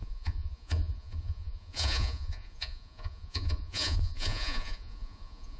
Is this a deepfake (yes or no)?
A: yes